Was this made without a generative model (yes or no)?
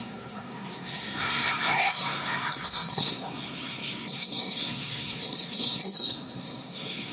no